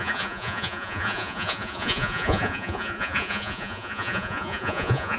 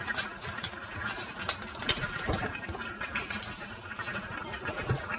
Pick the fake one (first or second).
first